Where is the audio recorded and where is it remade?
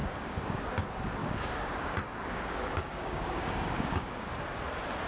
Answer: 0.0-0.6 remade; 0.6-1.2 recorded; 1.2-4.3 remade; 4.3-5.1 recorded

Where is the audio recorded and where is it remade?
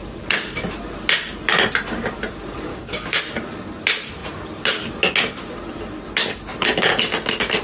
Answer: 0.0-2.7 recorded; 2.7-3.2 remade; 3.2-7.6 recorded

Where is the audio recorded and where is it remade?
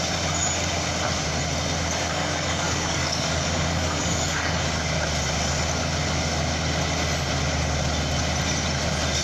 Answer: 0.0-2.1 recorded; 2.1-4.6 remade; 4.6-9.2 recorded